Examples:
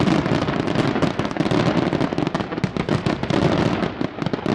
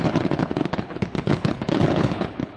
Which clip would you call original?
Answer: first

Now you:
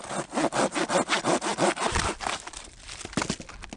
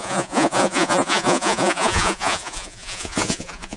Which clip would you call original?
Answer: first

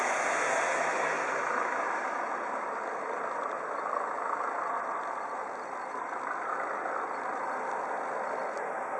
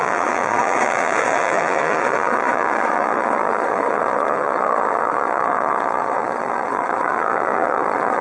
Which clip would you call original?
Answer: first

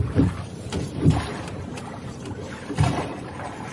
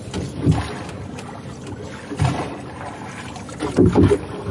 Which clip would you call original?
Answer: second